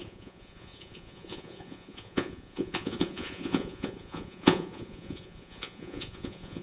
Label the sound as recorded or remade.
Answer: remade